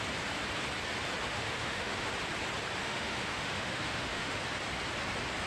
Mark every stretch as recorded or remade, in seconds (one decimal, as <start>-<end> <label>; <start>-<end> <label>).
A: 0.0-1.2 recorded; 1.2-2.1 remade; 2.1-2.8 recorded; 2.8-4.4 remade; 4.4-5.5 recorded